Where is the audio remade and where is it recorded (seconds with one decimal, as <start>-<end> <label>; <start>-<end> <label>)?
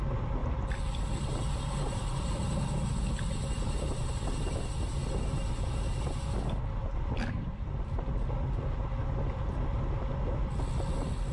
0.0-11.3 recorded